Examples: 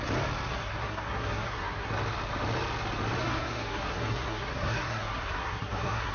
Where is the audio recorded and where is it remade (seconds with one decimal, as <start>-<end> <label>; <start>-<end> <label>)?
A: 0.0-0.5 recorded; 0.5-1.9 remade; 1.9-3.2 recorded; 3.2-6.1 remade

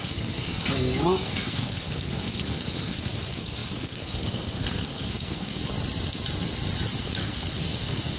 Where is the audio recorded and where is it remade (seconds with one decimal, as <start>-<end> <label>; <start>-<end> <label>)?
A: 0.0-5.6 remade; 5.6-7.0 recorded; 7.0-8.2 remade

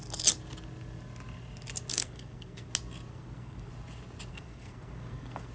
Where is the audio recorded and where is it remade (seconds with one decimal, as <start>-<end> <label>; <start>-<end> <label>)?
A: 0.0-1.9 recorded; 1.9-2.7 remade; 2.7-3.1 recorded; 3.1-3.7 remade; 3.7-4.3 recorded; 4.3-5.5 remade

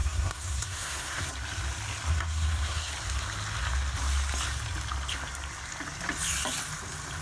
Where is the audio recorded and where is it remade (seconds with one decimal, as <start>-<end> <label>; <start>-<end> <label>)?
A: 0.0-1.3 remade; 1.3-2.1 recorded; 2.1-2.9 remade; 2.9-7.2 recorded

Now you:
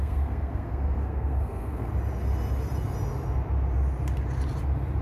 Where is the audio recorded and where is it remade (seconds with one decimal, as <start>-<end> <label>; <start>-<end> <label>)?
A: 0.0-1.9 remade; 1.9-5.0 recorded

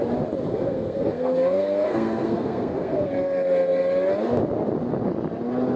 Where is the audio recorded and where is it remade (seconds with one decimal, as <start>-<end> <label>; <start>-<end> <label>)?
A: 0.0-0.5 recorded; 0.5-3.1 remade; 3.1-5.8 recorded

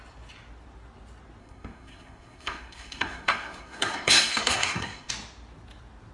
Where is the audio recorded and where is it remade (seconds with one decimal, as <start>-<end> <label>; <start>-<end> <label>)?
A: 0.0-1.4 recorded; 1.4-5.1 remade; 5.1-6.1 recorded

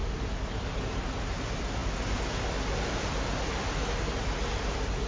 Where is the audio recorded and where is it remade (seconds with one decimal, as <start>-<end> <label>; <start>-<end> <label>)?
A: 0.0-5.1 recorded